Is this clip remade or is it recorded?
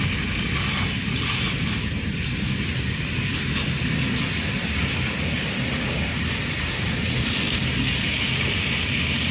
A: recorded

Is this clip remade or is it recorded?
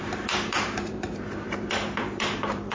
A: remade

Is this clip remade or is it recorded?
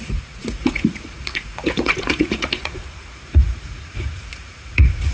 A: remade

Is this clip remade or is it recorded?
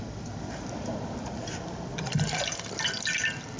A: recorded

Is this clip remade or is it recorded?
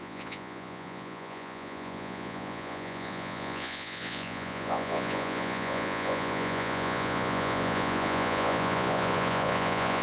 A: remade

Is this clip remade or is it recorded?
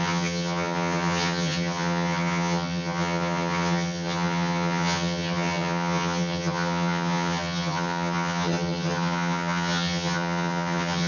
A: remade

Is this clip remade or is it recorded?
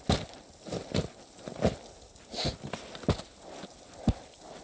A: recorded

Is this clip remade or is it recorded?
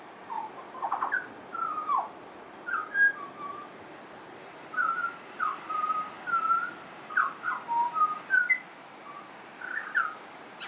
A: recorded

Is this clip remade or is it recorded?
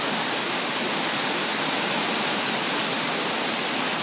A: recorded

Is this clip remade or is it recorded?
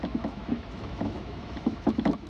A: remade